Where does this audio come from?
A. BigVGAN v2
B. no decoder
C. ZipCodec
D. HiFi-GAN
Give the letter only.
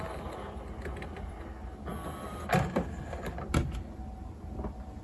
B